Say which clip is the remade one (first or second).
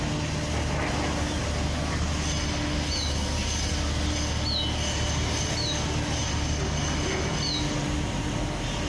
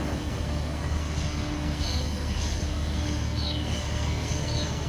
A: second